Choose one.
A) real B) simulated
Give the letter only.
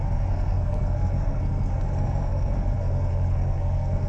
B